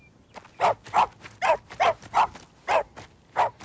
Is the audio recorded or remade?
recorded